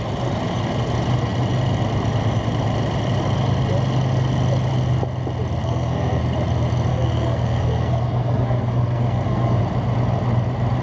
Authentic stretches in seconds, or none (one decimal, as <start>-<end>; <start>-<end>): 0.0-5.6; 6.2-6.9; 9.6-10.8